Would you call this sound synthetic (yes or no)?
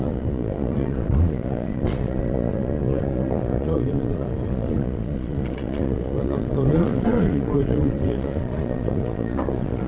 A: yes